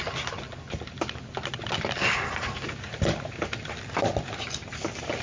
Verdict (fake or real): fake